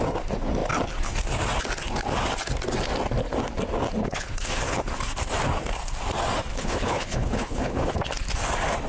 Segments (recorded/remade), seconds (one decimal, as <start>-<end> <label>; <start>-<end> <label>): 0.0-4.0 recorded; 4.0-4.6 remade; 4.6-6.5 recorded; 6.5-7.9 remade; 7.9-8.9 recorded